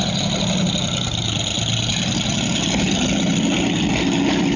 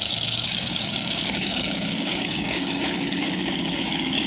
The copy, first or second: second